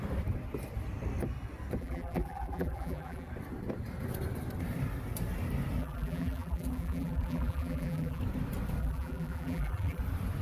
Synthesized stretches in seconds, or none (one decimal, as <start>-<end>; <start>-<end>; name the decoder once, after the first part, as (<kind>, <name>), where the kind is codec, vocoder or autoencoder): 1.8-3.3 (vocoder, BigVGAN v2); 5.8-8.2; 8.8-10.0

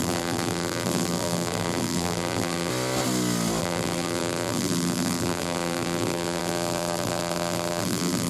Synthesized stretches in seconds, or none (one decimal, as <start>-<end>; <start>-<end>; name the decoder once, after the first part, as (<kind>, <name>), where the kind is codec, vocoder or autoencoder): 0.0-2.7 (vocoder, BigVGAN v2); 3.6-8.3

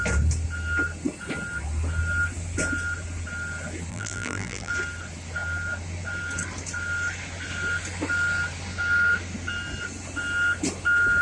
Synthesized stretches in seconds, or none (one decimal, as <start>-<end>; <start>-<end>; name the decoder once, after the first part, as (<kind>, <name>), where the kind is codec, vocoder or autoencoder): 3.9-4.7 (vocoder, BigVGAN v2)

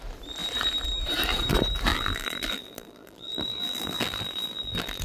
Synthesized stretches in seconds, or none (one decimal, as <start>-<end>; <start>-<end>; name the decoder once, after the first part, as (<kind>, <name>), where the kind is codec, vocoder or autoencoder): 1.9-5.0 (vocoder, BigVGAN v2)

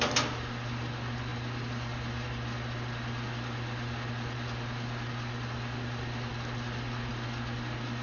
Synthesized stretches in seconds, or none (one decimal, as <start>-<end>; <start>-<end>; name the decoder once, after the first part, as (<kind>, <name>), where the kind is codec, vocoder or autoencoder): none